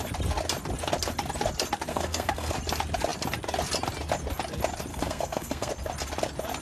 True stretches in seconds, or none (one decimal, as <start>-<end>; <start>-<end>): 0.0-1.9; 2.5-4.9; 5.7-6.6